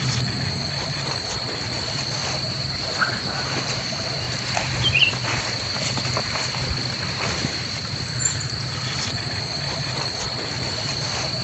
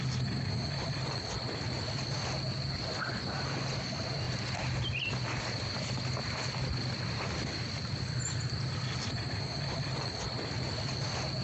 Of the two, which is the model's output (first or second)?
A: first